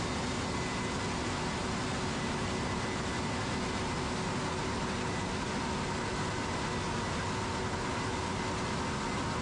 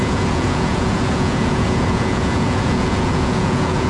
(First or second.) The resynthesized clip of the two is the second